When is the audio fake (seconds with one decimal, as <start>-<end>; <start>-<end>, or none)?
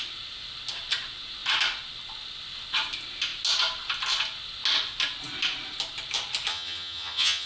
6.5-7.5